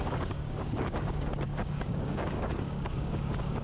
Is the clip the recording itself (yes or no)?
no